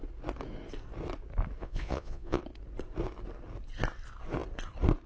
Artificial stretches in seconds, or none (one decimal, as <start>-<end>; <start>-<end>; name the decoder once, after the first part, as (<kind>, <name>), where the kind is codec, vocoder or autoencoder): 1.6-2.4 (vocoder, Vocos)